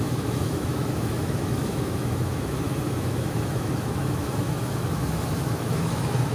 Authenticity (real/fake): fake